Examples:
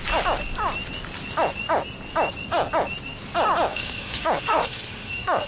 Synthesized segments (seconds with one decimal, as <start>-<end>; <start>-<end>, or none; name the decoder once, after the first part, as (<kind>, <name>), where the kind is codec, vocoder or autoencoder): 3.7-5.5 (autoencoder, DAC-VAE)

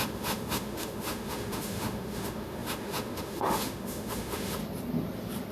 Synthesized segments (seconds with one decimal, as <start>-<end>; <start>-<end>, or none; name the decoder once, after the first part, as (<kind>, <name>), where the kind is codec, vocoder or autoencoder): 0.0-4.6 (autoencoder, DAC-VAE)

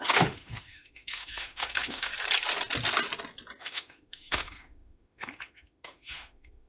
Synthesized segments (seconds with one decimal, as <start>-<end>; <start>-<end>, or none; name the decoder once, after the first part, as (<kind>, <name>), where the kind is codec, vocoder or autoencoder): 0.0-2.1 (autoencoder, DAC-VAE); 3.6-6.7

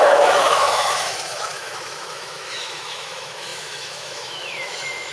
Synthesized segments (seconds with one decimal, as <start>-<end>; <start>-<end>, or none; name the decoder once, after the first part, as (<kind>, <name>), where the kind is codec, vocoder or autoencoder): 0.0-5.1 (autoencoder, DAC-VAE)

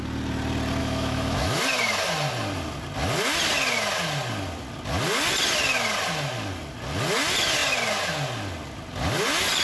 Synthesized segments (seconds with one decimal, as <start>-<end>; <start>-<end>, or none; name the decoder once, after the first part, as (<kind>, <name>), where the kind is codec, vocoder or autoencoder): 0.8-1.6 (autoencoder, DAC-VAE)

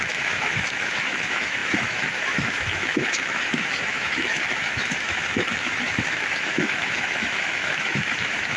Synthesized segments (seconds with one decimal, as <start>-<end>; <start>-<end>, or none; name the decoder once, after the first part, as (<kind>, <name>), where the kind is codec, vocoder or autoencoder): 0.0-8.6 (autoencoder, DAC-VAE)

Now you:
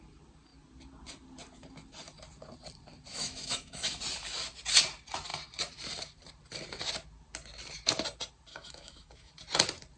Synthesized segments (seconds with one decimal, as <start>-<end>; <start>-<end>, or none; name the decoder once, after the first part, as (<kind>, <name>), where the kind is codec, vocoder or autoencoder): 3.1-4.0 (autoencoder, DAC-VAE); 8.5-9.3

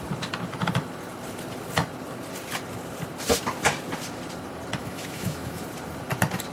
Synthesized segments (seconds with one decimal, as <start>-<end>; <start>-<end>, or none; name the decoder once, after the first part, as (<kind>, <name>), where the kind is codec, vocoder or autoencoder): 4.8-5.6 (autoencoder, DAC-VAE)